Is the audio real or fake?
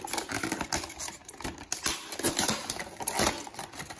real